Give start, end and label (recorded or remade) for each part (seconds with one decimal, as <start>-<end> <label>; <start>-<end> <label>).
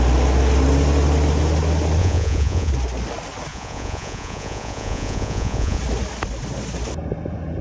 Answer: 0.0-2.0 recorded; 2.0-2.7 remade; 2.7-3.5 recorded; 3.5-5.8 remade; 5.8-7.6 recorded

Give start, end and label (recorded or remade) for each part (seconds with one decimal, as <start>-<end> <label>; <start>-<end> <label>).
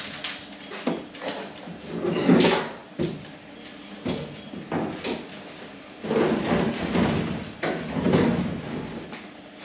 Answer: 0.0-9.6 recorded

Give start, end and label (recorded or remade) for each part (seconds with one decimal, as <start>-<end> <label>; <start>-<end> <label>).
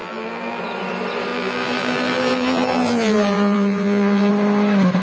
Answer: 0.0-0.6 remade; 0.6-1.3 recorded; 1.3-4.3 remade; 4.3-5.0 recorded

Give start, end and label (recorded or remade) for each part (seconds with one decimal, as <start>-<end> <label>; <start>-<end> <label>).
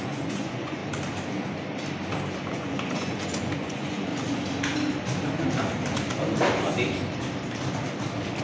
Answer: 0.0-0.8 remade; 0.8-2.5 recorded; 2.5-4.1 remade; 4.1-8.4 recorded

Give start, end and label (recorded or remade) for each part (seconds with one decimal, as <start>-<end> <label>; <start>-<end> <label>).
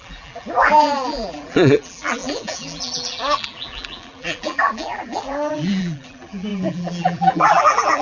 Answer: 0.0-8.0 remade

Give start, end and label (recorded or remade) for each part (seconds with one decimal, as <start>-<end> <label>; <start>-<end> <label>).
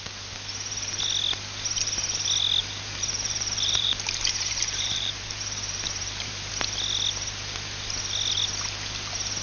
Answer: 0.0-2.6 recorded; 2.6-6.5 remade; 6.5-9.4 recorded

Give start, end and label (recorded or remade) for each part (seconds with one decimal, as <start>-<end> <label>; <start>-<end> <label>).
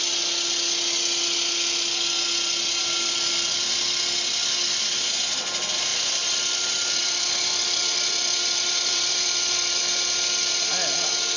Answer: 0.0-5.9 recorded; 5.9-9.8 remade; 9.8-11.4 recorded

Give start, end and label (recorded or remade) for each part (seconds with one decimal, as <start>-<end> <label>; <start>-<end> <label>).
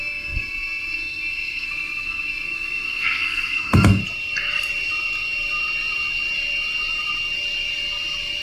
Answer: 0.0-4.0 remade; 4.0-8.4 recorded